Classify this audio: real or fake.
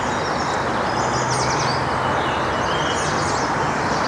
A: real